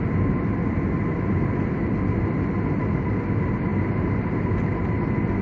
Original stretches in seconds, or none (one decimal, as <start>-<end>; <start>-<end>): 0.0-5.4